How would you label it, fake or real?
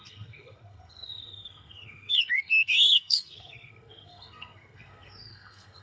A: fake